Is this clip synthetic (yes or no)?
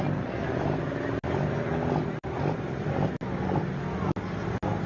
no